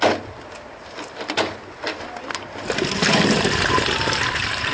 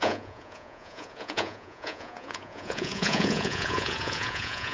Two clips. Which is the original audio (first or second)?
first